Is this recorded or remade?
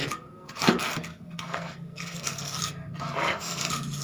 remade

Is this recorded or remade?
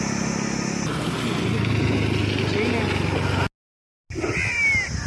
recorded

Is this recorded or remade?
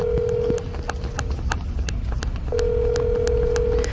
recorded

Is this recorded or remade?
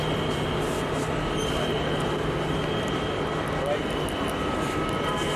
recorded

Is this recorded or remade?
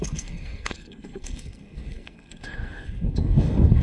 remade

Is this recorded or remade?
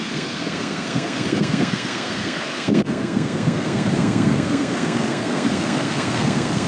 remade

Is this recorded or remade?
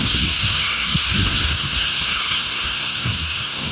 remade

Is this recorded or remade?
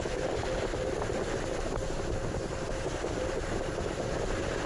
recorded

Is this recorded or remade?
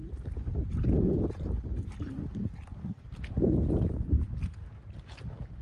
recorded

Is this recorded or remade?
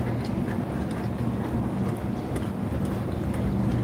recorded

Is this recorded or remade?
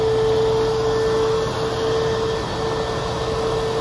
recorded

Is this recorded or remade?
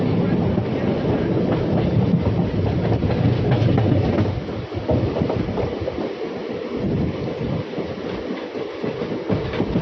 recorded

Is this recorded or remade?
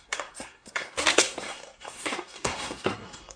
remade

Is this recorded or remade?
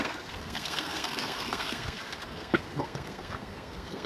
remade